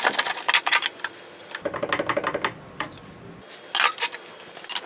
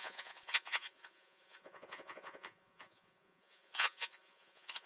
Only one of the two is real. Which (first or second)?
first